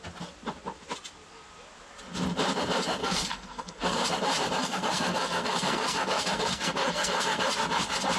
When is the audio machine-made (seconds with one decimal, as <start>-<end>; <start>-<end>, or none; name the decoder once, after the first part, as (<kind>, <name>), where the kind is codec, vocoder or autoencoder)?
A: 3.0-4.0 (codec, SNAC); 4.6-7.4

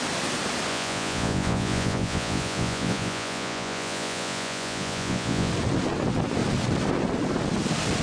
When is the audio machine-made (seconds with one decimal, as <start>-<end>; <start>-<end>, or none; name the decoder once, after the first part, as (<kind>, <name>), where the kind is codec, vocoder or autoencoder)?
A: 0.7-5.5 (vocoder, Vocos)

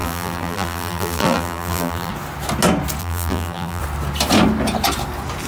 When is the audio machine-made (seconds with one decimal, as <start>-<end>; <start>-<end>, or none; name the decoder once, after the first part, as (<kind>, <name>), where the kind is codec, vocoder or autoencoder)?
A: 0.0-2.1 (vocoder, BigVGAN v2); 3.0-3.8

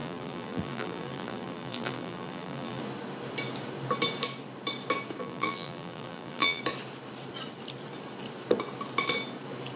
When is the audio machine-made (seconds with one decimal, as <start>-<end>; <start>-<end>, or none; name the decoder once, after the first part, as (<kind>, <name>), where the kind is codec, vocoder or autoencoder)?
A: 0.0-2.8 (vocoder, BigVGAN v2); 5.2-6.6

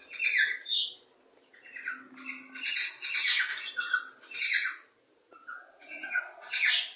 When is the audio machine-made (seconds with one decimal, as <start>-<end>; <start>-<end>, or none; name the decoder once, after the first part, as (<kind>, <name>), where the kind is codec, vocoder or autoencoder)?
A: 5.4-6.2 (vocoder, Vocos)

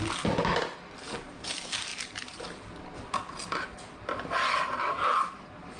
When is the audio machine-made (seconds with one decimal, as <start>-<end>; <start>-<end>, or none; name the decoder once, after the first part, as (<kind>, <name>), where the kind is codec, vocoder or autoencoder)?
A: none

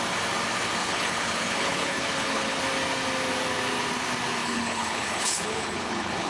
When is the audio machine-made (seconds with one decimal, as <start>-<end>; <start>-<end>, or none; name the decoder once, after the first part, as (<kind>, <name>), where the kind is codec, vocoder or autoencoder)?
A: 0.8-2.6 (codec, HILCodec); 4.4-6.3

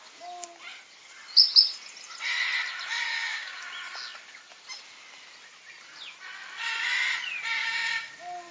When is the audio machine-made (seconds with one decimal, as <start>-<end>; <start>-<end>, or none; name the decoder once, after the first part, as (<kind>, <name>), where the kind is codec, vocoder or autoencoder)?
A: 3.1-3.6 (codec, DAC); 7.6-8.1